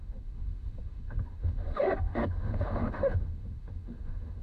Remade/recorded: remade